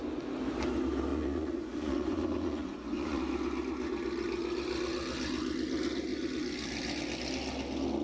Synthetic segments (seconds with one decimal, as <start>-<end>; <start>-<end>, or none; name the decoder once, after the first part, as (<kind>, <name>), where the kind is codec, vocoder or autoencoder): 1.1-3.2 (vocoder, Vocos)